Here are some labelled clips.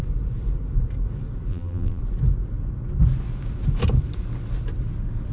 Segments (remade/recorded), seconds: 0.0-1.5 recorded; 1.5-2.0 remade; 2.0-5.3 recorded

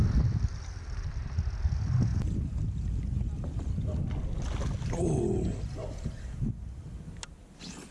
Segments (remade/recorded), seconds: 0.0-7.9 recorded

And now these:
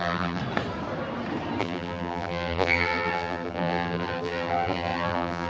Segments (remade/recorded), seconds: 0.0-0.4 remade; 0.4-1.6 recorded; 1.6-5.5 remade

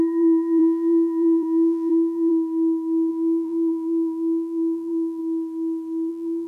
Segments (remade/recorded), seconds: 0.0-2.3 remade; 2.3-3.1 recorded; 3.1-5.2 remade; 5.2-6.1 recorded; 6.1-6.5 remade

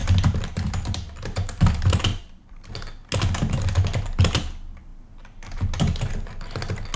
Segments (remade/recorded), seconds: 0.0-1.7 remade; 1.7-2.1 recorded; 2.1-2.7 remade; 2.7-7.0 recorded

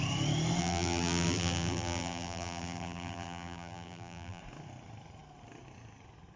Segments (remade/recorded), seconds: 0.0-0.6 recorded; 0.6-4.4 remade; 4.4-6.4 recorded